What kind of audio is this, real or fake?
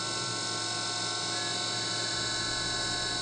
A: real